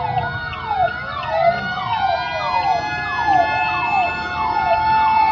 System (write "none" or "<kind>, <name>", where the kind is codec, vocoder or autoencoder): none